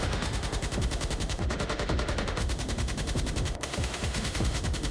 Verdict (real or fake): fake